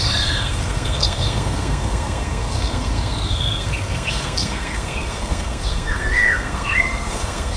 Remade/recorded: remade